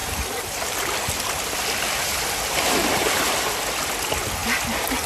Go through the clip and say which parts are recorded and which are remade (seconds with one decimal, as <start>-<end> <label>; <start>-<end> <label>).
0.0-0.8 remade; 0.8-5.1 recorded